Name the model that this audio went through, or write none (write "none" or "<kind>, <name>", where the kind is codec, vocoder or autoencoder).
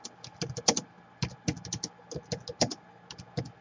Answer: none